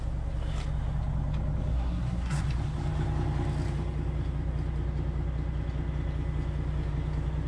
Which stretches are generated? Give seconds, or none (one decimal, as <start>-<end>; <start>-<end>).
1.7-2.4

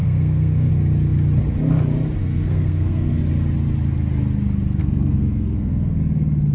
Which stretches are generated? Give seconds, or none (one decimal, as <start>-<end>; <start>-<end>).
0.0-0.7; 2.2-3.2; 4.8-6.0

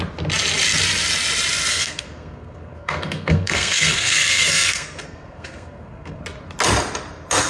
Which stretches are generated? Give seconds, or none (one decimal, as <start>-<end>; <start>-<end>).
1.7-6.2

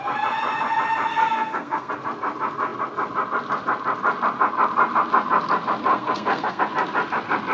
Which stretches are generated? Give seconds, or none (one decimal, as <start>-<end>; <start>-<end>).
1.1-1.9; 5.9-6.6